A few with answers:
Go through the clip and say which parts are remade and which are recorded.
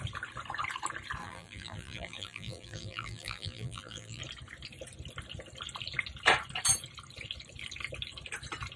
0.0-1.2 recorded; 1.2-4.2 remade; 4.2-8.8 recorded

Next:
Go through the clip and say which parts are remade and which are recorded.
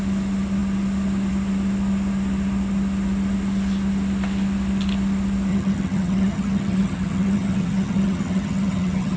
0.0-5.5 recorded; 5.5-9.2 remade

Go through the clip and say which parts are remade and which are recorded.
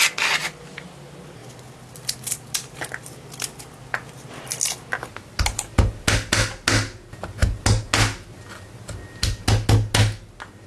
0.0-10.7 recorded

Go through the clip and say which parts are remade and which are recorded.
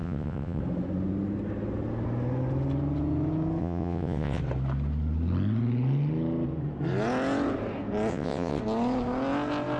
0.0-0.6 remade; 0.6-3.6 recorded; 3.6-4.4 remade; 4.4-8.1 recorded; 8.1-8.6 remade; 8.6-9.8 recorded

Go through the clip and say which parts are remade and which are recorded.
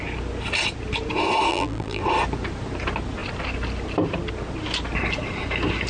0.0-1.5 recorded; 1.5-2.0 remade; 2.0-5.9 recorded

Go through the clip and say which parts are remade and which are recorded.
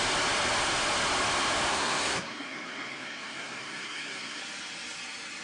0.0-1.7 recorded; 1.7-4.4 remade; 4.4-5.4 recorded